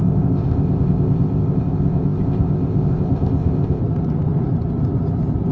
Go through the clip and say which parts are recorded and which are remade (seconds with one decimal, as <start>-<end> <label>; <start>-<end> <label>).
0.0-3.8 remade; 3.8-5.5 recorded